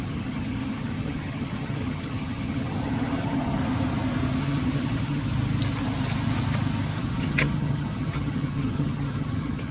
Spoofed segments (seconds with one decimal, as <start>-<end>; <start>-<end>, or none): 0.0-3.6; 4.4-5.3; 7.0-9.7